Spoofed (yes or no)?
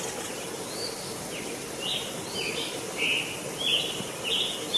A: no